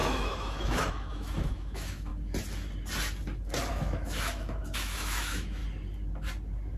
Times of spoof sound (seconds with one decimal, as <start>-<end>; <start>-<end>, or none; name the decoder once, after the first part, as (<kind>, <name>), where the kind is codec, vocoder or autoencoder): 0.0-2.1 (autoencoder, DAC-VAE); 3.7-5.6